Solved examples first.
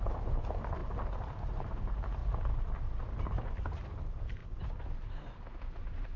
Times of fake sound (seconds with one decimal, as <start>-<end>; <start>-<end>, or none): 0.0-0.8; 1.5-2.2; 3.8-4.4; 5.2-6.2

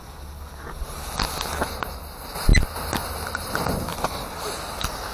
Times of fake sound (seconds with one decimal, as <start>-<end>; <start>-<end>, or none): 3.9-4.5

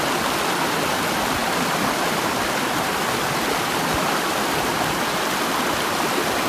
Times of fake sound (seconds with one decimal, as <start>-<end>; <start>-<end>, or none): none

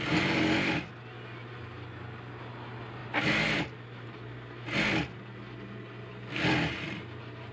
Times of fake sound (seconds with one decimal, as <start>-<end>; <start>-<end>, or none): none